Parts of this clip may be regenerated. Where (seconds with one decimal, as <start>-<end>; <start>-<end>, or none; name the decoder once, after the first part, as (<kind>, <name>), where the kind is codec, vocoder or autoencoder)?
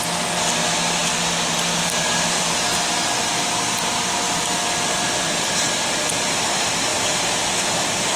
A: none